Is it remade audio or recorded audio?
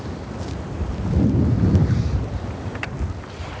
recorded